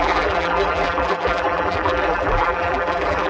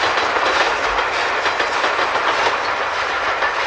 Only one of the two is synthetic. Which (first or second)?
first